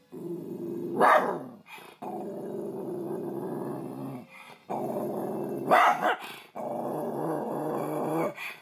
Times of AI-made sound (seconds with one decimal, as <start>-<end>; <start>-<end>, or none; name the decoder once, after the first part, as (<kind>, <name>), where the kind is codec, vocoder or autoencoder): none